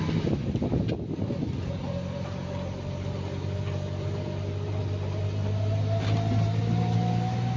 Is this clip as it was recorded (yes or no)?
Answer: yes